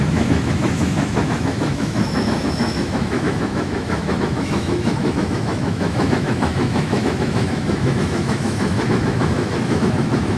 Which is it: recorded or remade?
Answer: remade